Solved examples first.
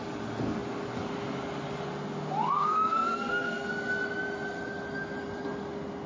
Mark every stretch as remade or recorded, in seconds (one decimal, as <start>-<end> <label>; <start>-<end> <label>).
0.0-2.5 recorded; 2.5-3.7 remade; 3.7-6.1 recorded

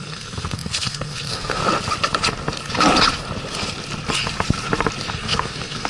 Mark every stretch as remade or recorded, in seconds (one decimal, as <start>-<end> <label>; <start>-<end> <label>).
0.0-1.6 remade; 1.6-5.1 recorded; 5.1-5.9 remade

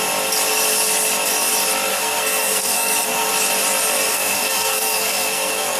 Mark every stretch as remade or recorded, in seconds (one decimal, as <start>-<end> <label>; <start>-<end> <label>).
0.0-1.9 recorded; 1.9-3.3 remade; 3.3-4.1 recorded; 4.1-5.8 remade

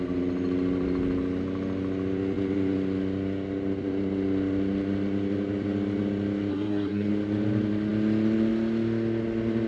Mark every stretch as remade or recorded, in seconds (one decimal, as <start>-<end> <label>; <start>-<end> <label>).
0.0-6.5 recorded; 6.5-7.1 remade; 7.1-9.7 recorded

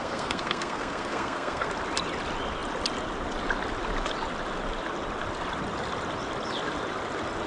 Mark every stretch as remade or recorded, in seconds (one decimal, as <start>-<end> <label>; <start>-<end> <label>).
0.0-1.7 remade; 1.7-7.5 recorded

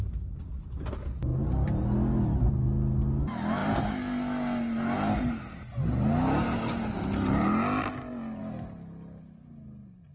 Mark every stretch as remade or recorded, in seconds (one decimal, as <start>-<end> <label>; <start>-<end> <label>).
0.0-10.1 recorded

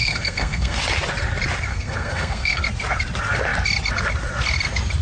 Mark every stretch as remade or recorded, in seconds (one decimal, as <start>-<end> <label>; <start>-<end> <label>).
0.0-0.8 remade; 0.8-1.7 recorded; 1.7-2.6 remade; 2.6-5.0 recorded

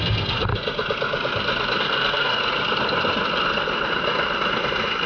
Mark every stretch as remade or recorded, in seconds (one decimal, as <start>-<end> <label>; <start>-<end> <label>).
0.0-0.5 remade; 0.5-1.8 recorded; 1.8-2.4 remade; 2.4-5.1 recorded